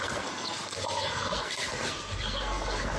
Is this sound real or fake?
fake